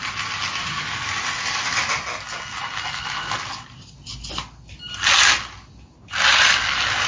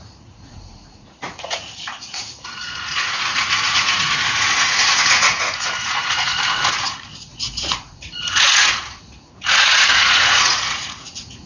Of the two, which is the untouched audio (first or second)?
first